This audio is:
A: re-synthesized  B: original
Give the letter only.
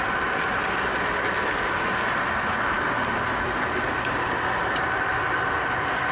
B